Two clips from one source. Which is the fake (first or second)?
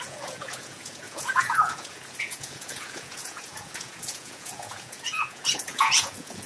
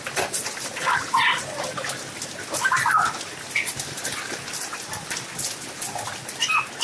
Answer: first